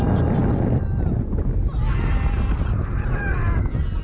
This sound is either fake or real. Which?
real